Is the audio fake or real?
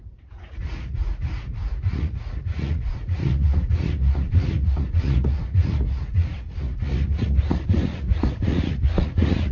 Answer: fake